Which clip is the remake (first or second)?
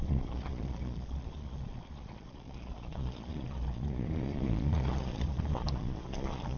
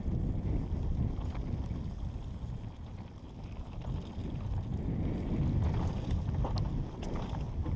first